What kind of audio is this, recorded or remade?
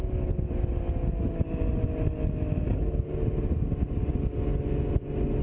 recorded